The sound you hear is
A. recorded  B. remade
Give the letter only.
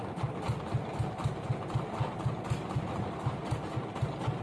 A